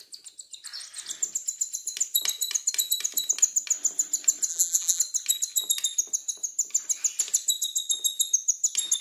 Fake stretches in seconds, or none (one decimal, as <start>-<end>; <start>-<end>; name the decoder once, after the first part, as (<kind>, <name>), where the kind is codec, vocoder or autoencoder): 4.5-5.0 (vocoder, BigVGAN v2)